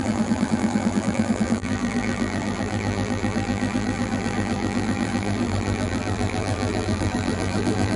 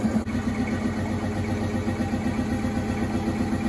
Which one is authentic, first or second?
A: second